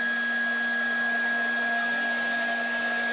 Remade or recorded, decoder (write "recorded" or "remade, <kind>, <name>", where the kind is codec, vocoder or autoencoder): recorded